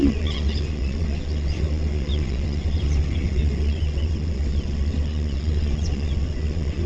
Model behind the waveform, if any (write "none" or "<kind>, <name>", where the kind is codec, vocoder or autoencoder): vocoder, WaveNeXt